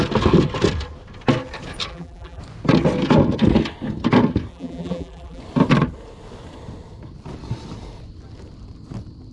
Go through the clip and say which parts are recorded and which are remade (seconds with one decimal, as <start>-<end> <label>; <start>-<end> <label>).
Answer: 0.0-1.9 recorded; 1.9-2.4 remade; 2.4-4.5 recorded; 4.5-5.4 remade; 5.4-9.3 recorded